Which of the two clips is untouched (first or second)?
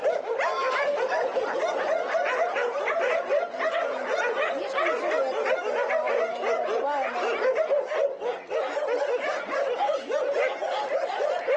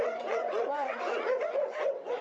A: first